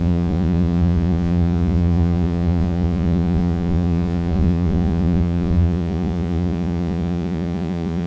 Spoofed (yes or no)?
yes